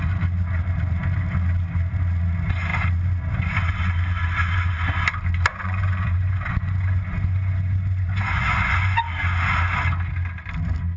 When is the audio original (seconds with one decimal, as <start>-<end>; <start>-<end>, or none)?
0.0-5.5; 9.0-11.0